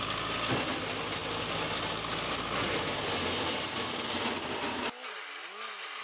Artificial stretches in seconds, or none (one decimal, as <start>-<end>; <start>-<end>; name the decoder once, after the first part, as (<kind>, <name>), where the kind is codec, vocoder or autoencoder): none

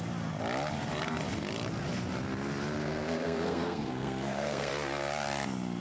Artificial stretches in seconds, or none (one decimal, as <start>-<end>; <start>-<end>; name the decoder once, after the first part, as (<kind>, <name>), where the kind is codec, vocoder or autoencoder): 2.8-4.7 (codec, SNAC)

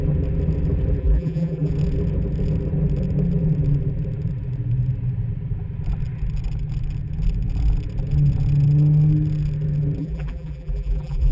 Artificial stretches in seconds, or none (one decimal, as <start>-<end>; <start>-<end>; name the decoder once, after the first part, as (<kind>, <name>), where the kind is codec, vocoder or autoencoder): 1.0-1.7 (vocoder, BigVGAN v2); 10.0-11.3